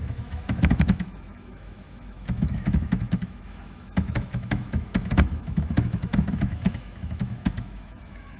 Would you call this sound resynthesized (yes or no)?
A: yes